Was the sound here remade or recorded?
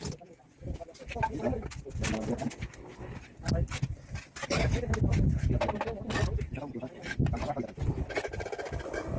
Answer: recorded